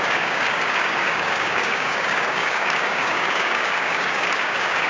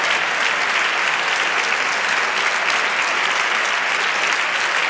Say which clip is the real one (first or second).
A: second